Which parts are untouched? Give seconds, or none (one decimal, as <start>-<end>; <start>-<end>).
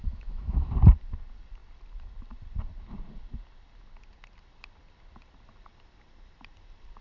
0.7-7.0